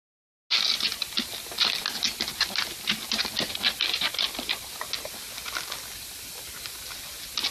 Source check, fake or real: real